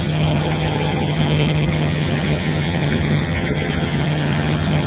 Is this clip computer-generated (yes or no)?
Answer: yes